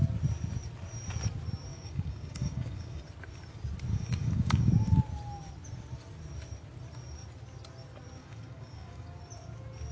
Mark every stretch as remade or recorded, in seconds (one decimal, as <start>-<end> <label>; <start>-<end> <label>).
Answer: 0.0-1.7 recorded; 1.7-3.0 remade; 3.0-3.9 recorded; 3.9-4.7 remade; 4.7-8.2 recorded; 8.2-9.2 remade; 9.2-9.9 recorded